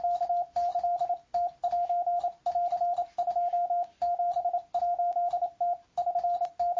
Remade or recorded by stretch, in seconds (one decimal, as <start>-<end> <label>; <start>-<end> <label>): 0.0-6.8 recorded